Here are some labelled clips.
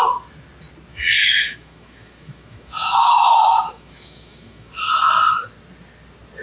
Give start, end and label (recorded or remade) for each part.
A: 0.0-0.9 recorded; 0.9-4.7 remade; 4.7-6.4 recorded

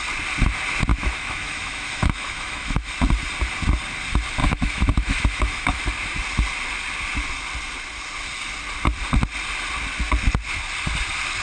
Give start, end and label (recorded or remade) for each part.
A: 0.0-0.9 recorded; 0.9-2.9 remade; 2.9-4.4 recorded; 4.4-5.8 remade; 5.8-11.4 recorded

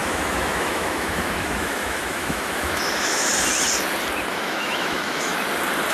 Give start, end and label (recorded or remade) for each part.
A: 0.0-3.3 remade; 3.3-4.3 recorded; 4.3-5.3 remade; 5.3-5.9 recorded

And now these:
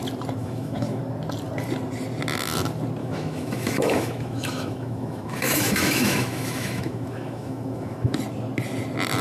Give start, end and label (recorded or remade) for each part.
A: 0.0-0.4 recorded; 0.4-1.0 remade; 1.0-3.0 recorded; 3.0-8.2 remade; 8.2-9.2 recorded

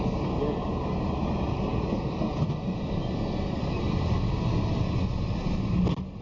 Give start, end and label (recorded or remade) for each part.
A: 0.0-6.2 recorded